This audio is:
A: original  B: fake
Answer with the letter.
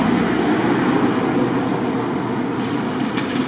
A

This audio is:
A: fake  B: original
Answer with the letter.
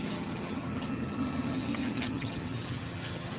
A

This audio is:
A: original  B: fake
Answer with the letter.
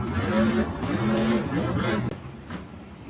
A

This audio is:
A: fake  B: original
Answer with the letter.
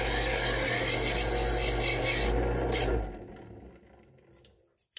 B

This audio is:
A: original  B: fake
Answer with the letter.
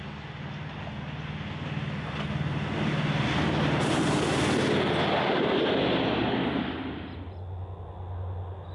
A